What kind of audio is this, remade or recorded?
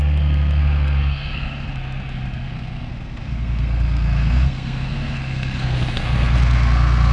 remade